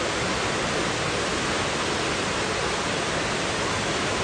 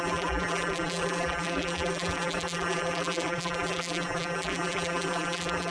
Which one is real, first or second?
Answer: first